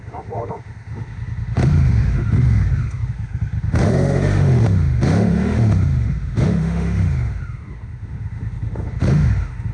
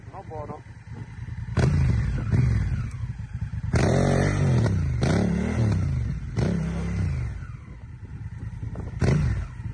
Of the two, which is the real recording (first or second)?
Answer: second